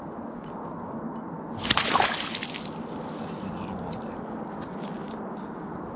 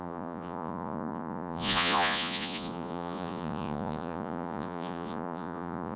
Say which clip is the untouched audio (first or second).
first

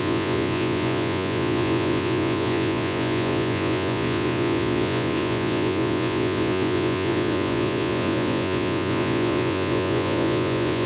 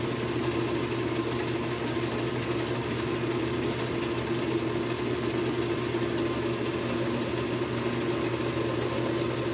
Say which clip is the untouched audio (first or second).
second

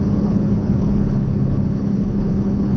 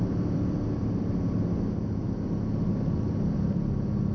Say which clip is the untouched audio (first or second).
second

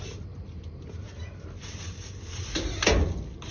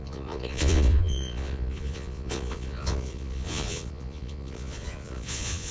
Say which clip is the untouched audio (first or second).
first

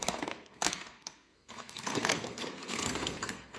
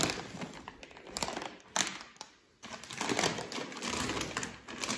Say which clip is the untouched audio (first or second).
second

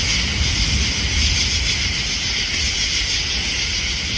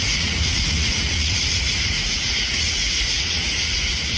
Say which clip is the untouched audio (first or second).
first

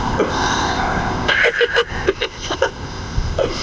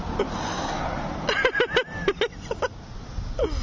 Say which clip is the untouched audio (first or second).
second